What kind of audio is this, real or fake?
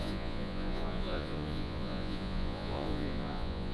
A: fake